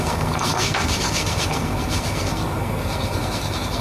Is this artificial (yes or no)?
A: yes